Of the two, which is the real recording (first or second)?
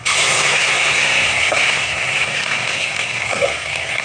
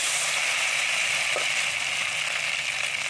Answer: second